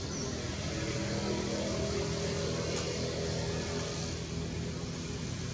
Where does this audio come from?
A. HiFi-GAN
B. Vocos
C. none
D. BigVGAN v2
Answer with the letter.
C